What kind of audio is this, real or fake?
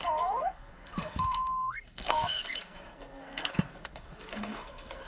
fake